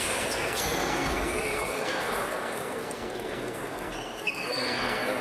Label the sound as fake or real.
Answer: fake